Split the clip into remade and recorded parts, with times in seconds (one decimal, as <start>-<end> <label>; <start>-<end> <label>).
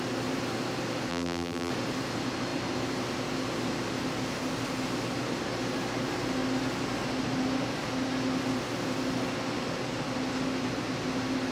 0.0-1.1 recorded; 1.1-1.7 remade; 1.7-11.5 recorded